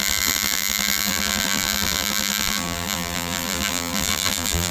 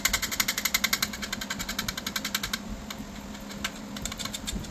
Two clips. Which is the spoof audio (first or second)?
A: first